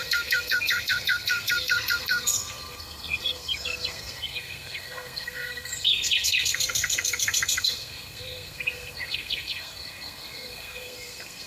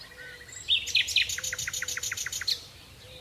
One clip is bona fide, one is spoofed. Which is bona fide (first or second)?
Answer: second